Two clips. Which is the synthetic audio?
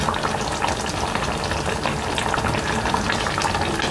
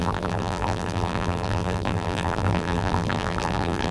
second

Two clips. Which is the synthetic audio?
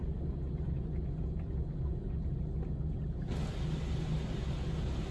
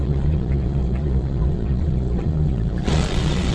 second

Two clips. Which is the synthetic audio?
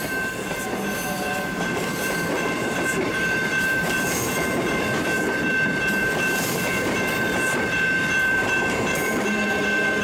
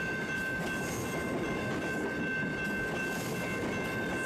first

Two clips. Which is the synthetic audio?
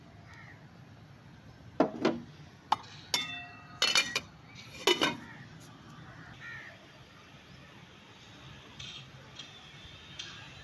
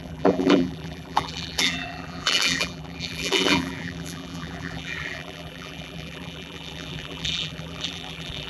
second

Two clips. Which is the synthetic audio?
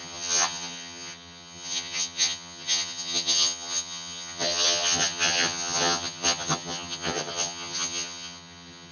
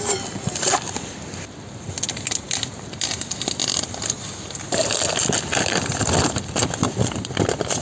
first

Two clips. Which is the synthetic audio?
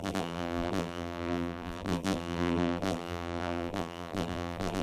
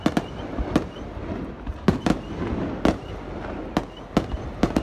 first